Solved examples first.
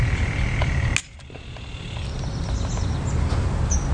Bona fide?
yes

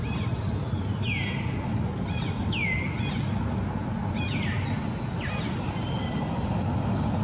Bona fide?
yes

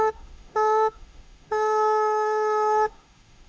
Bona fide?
no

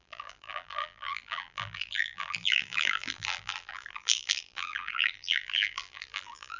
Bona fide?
no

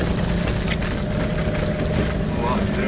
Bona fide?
yes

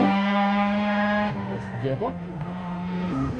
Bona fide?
no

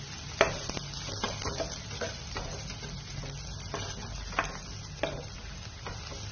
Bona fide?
yes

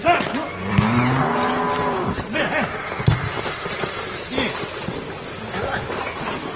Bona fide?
yes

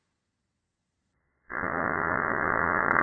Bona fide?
no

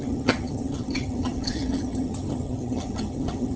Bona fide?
no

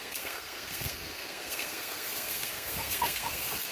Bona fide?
no